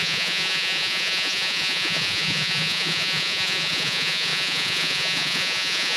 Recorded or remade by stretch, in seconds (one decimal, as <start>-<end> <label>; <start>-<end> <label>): 0.0-6.0 remade